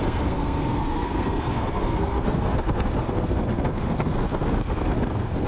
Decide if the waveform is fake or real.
fake